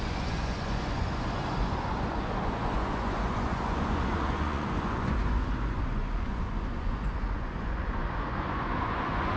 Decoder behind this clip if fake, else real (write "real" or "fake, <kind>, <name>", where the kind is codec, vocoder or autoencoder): fake, vocoder, Vocos